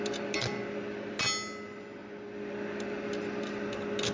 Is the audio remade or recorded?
recorded